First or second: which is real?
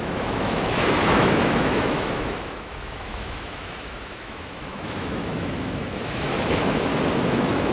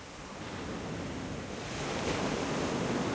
second